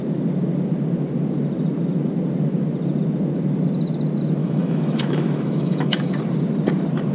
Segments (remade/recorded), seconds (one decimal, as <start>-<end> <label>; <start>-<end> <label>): 0.0-4.4 recorded; 4.4-6.1 remade; 6.1-7.1 recorded